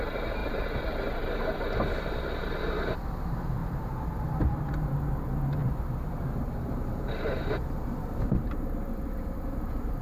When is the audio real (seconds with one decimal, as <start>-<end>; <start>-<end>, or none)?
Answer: none